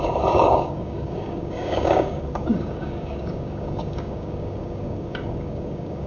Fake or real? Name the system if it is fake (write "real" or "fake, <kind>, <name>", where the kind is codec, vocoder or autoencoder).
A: fake, codec, DAC